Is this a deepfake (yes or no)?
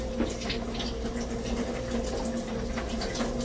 no